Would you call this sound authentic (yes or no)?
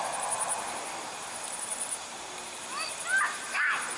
yes